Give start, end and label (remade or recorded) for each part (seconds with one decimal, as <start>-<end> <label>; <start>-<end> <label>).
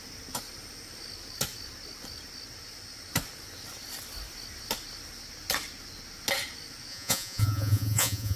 0.0-6.9 recorded; 6.9-8.4 remade